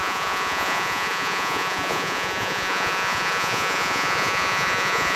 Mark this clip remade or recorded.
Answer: remade